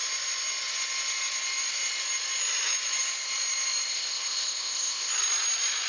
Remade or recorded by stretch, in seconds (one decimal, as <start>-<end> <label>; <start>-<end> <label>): 0.0-3.9 recorded; 3.9-5.1 remade; 5.1-5.9 recorded